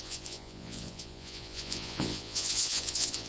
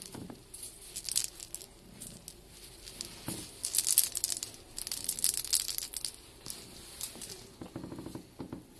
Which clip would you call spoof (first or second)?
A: first